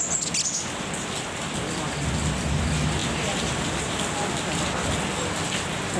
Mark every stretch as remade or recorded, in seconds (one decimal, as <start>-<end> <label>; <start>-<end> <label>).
0.0-6.0 recorded